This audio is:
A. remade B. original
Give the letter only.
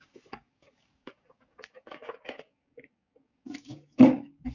A